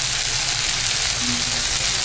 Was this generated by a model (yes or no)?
no